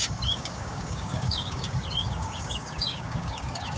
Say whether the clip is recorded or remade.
remade